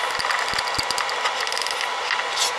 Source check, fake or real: real